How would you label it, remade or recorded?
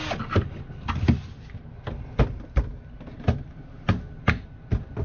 recorded